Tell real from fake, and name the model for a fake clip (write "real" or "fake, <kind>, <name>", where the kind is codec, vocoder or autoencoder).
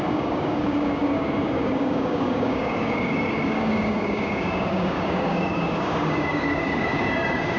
fake, codec, DAC